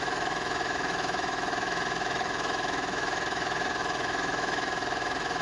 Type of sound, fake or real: fake